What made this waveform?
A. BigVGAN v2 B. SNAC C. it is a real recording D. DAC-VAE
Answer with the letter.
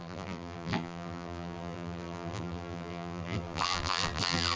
A